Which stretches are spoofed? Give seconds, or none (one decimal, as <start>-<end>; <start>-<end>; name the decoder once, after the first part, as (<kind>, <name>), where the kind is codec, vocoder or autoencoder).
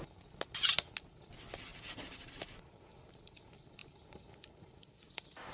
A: 1.7-2.3 (vocoder, BigVGAN v2); 3.8-5.5